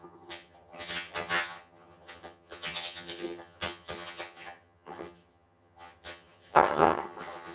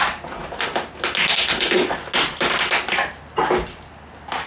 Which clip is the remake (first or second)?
first